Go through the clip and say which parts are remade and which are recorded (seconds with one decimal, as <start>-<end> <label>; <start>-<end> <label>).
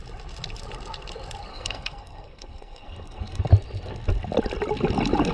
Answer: 0.0-1.5 recorded; 1.5-3.5 remade; 3.5-5.3 recorded